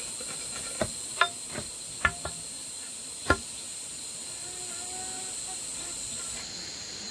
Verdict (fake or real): real